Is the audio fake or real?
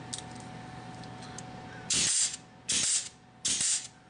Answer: real